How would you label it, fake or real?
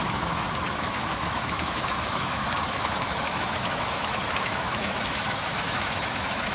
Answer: fake